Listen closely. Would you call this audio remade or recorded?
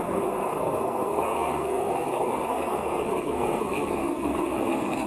remade